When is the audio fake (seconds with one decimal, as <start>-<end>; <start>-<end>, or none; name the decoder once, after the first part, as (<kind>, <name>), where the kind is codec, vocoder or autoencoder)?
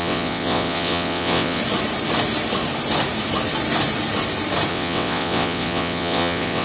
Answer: 0.0-1.6 (vocoder, WaveNeXt); 4.7-6.6